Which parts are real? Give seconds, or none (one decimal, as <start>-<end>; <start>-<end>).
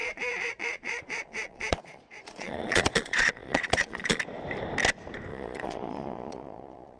4.2-5.3